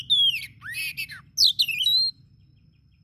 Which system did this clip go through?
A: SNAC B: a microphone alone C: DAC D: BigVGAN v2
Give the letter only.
B